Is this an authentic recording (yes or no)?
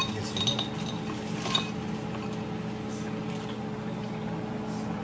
yes